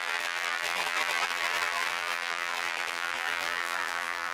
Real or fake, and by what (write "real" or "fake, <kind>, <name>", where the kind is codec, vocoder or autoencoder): fake, vocoder, BigVGAN v2